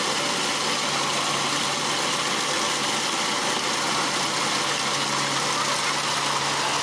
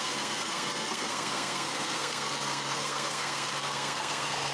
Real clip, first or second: first